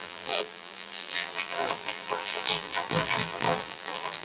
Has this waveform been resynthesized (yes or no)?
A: yes